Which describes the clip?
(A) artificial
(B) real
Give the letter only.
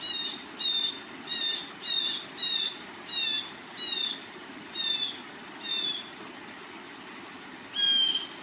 B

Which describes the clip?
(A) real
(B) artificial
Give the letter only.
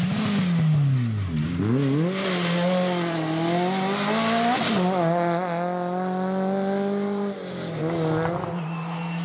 A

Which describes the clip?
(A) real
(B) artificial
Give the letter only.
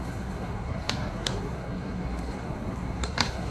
B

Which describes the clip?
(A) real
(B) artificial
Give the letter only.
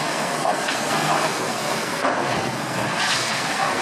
B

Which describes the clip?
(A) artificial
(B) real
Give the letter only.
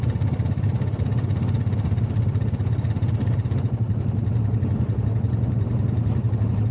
B